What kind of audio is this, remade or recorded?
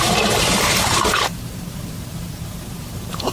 remade